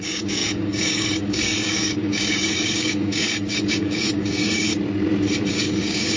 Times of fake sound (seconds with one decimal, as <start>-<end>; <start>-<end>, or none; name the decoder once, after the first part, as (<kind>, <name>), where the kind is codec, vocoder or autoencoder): 0.0-4.7 (codec, DAC); 5.5-6.2